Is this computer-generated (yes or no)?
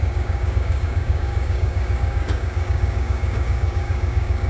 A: yes